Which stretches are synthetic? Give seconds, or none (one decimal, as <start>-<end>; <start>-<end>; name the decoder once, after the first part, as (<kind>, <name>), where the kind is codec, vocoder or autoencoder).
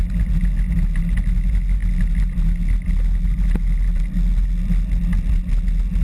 none